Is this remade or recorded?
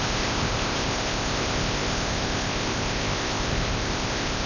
remade